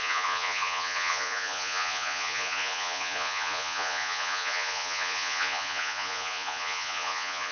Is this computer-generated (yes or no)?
yes